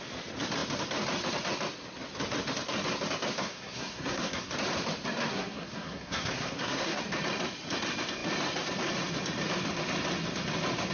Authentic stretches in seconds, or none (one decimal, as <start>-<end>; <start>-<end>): 0.0-3.4; 4.5-5.3; 7.0-10.9